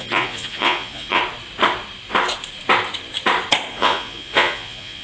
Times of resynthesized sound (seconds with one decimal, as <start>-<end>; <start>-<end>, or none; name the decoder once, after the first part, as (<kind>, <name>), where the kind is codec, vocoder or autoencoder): 0.0-1.2 (vocoder, Vocos); 3.7-5.0